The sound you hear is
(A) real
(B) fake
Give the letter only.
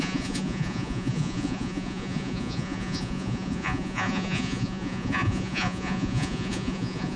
B